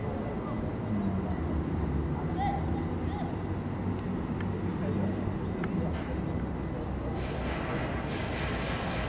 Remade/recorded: recorded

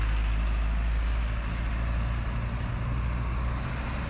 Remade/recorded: recorded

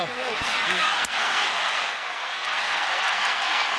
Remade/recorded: remade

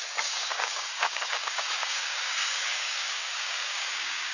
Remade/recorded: remade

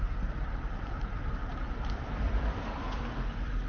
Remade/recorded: remade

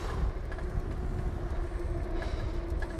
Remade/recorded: recorded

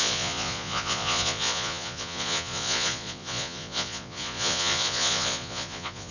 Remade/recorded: remade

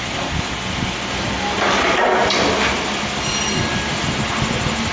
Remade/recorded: recorded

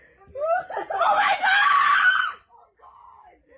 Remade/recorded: remade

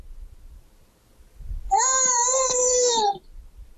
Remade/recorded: recorded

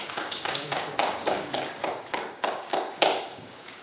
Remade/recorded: remade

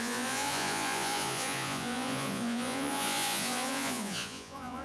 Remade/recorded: remade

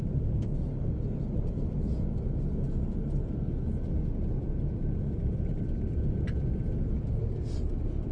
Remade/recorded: recorded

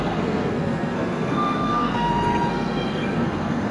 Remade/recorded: remade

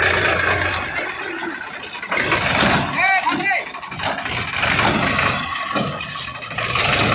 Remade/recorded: recorded